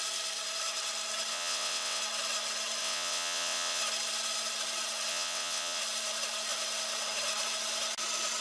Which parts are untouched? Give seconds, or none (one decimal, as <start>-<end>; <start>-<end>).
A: 0.0-1.3; 2.0-2.8; 3.8-5.1; 5.8-8.4